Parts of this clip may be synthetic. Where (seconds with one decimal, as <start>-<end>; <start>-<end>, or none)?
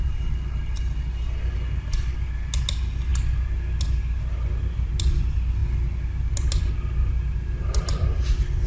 none